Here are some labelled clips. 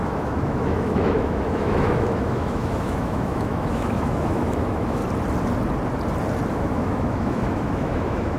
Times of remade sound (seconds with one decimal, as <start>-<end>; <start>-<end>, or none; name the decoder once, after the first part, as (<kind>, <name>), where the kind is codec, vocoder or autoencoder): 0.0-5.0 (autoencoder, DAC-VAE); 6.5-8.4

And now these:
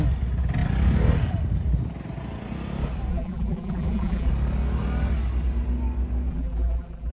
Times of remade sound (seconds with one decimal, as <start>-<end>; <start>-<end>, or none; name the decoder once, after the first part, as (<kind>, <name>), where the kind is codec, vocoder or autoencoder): 3.1-4.3 (vocoder, BigVGAN v2); 6.3-7.1

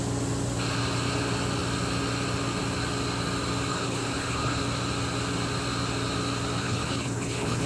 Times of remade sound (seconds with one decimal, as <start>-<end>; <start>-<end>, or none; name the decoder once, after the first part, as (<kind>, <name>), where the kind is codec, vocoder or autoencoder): 3.7-4.6 (codec, HILCodec); 6.6-7.7

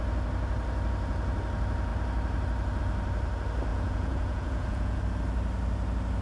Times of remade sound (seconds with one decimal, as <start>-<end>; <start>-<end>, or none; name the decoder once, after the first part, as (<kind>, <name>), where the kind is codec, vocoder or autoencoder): 3.7-5.0 (vocoder, Vocos)